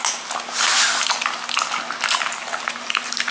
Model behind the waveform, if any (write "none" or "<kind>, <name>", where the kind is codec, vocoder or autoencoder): none